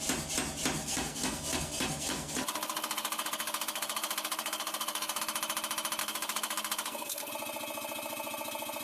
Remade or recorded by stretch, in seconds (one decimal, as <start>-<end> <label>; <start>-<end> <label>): 0.0-0.8 recorded; 0.8-5.2 remade; 5.2-6.0 recorded; 6.0-7.3 remade; 7.3-8.8 recorded

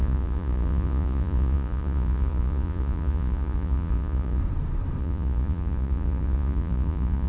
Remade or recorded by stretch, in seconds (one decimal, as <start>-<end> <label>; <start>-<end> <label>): 0.0-4.4 remade; 4.4-5.0 recorded; 5.0-7.3 remade

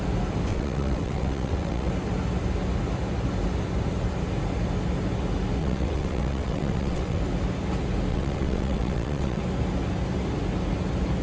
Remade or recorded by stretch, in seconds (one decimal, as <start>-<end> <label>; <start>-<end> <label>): 0.0-0.5 recorded; 0.5-1.9 remade; 1.9-5.6 recorded; 5.6-7.2 remade; 7.2-8.1 recorded; 8.1-9.4 remade; 9.4-11.2 recorded

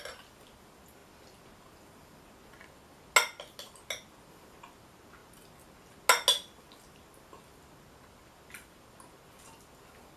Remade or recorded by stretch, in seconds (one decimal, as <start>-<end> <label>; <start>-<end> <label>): 0.0-10.2 recorded

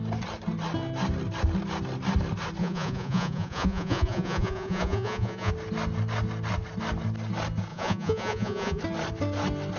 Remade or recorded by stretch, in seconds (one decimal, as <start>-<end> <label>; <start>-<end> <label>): 0.0-2.6 recorded; 2.6-5.5 remade; 5.5-7.7 recorded; 7.7-8.8 remade; 8.8-9.8 recorded